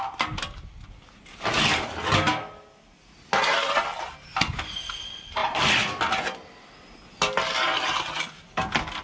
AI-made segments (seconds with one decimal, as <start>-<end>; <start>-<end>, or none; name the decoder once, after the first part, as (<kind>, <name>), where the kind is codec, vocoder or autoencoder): 4.3-5.0 (vocoder, BigVGAN v2); 5.4-6.0